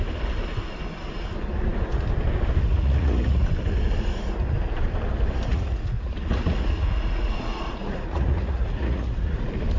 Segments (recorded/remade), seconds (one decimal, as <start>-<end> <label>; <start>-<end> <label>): 0.0-2.7 recorded; 2.7-3.5 remade; 3.5-5.5 recorded; 5.5-9.4 remade; 9.4-9.8 recorded